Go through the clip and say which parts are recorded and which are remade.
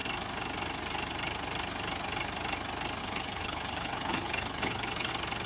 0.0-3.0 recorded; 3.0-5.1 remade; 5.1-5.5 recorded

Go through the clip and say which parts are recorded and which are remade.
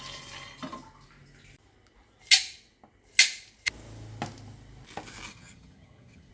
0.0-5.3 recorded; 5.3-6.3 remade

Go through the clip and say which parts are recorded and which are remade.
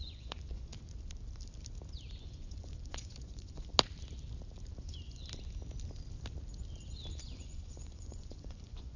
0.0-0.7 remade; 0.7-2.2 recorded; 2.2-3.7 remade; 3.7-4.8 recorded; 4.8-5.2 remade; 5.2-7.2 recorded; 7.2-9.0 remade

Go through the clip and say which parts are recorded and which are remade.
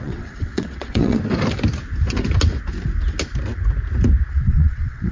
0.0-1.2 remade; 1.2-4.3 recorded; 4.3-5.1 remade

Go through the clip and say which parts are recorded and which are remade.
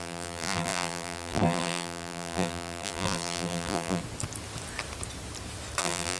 0.0-4.0 remade; 4.0-5.8 recorded; 5.8-6.2 remade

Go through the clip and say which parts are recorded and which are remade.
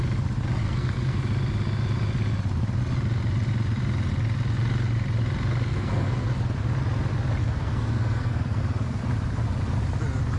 0.0-0.6 recorded; 0.6-1.2 remade; 1.2-5.7 recorded; 5.7-6.3 remade; 6.3-7.4 recorded; 7.4-9.0 remade; 9.0-10.4 recorded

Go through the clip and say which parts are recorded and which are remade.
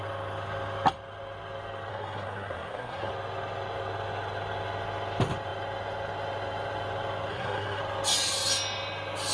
0.0-1.9 recorded; 1.9-3.1 remade; 3.1-7.3 recorded; 7.3-7.8 remade; 7.8-9.3 recorded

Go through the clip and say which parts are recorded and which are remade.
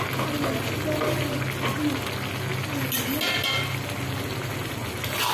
0.0-5.3 recorded